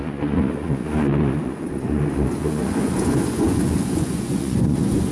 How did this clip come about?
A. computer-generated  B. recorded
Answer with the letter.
A